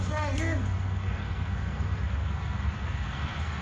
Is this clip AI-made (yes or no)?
yes